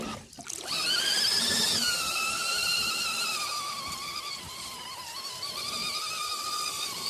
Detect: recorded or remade recorded